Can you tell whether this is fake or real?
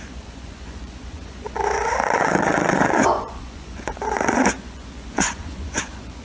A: fake